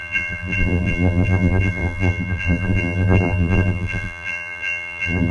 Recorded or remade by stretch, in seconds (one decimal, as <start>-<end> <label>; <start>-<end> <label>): 0.0-5.3 remade